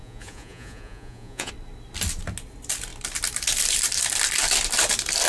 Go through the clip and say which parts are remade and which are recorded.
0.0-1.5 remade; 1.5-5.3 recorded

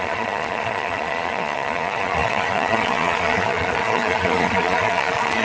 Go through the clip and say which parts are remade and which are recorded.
0.0-5.4 remade

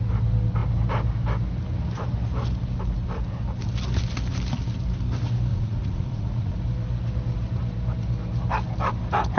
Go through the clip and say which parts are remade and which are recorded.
0.0-5.5 recorded; 5.5-6.6 remade; 6.6-9.4 recorded